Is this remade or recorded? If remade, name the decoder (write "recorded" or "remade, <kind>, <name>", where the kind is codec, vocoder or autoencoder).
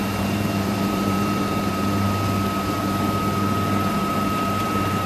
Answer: remade, vocoder, BigVGAN v2